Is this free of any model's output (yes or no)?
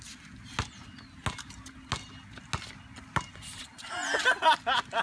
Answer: yes